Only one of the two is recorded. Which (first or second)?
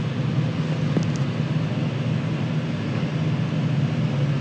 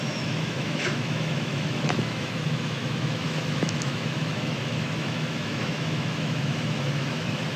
first